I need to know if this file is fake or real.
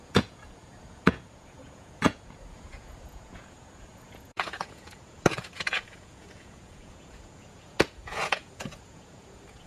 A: fake